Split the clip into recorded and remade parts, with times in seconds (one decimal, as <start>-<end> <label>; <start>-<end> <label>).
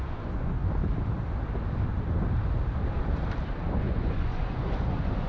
0.0-0.6 remade; 0.6-3.8 recorded; 3.8-5.3 remade